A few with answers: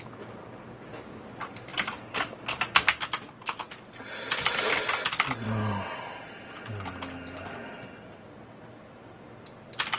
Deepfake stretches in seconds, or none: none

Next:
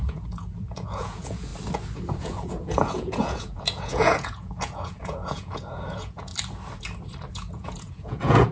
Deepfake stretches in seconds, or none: 0.0-1.5 (vocoder, Vocos); 2.2-6.3; 7.3-8.5

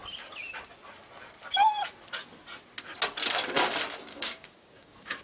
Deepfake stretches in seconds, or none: 4.1-5.2 (codec, DAC)

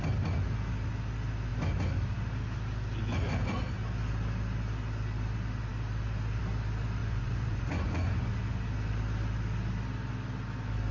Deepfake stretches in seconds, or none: 7.0-8.3 (vocoder, Vocos)